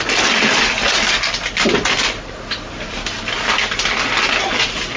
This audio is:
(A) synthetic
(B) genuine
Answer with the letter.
B